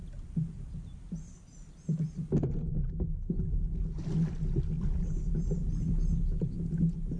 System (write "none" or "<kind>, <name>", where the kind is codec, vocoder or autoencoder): none